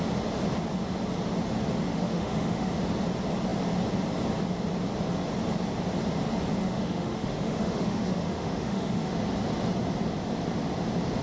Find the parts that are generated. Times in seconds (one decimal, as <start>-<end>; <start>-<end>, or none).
1.9-2.7; 6.6-9.1